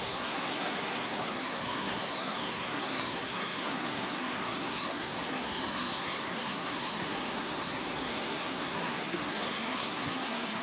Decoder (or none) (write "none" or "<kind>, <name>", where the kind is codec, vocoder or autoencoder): codec, SNAC